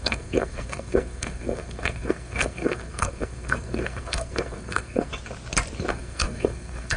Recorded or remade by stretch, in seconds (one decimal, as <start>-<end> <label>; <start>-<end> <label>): 0.0-5.1 remade; 5.1-5.9 recorded; 5.9-7.0 remade